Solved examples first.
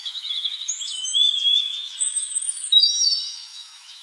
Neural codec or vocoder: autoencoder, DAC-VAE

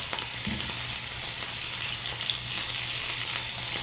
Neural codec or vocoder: none